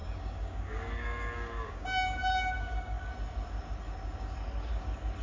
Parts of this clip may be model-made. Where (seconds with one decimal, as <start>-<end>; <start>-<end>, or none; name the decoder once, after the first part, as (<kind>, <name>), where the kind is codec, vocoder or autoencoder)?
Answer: 0.0-3.1 (codec, DAC)